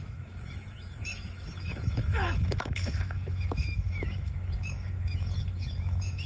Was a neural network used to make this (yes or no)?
yes